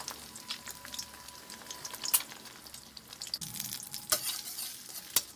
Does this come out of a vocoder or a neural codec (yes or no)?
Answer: no